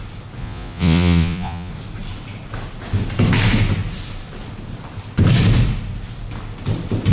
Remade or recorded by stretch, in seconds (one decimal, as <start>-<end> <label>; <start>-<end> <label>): 0.0-0.4 recorded; 0.4-1.7 remade; 1.7-7.1 recorded